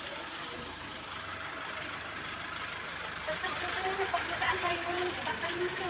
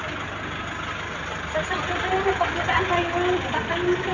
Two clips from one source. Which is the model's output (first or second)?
first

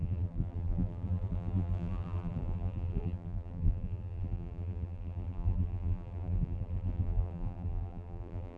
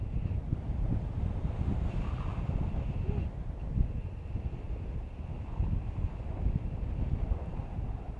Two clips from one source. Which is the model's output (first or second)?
first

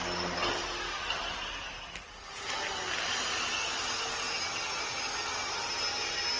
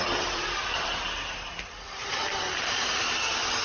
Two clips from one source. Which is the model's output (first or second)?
second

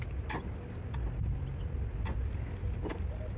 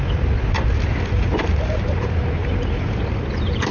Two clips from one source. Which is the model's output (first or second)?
second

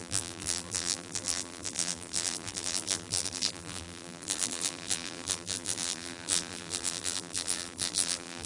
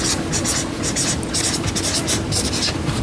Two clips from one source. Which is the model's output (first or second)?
first